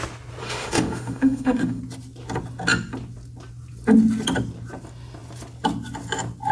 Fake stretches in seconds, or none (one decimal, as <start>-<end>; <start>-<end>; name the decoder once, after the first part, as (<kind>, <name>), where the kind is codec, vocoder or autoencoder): 0.4-1.8 (autoencoder, DAC-VAE)